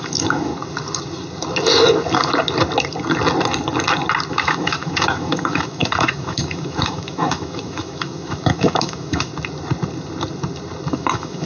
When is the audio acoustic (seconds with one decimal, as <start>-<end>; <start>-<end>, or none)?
0.5-4.3; 9.3-10.9